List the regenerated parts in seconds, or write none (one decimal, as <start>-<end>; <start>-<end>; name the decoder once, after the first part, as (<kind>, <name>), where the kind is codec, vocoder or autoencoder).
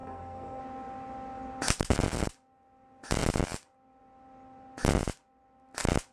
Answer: 0.0-0.6 (codec, SNAC)